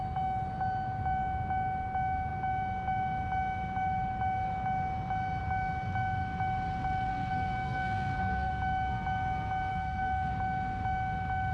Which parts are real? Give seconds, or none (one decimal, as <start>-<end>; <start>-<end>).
0.0-7.1; 8.5-9.7; 10.3-11.5